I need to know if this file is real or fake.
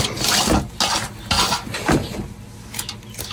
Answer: real